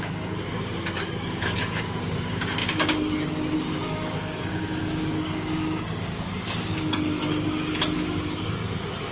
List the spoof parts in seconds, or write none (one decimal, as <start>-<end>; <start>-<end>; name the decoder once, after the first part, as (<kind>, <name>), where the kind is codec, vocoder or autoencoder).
0.0-9.1 (codec, DAC)

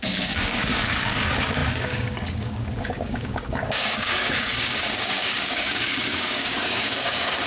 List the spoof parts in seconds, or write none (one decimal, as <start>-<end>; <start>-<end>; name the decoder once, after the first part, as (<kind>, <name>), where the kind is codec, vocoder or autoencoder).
0.0-7.5 (codec, DAC)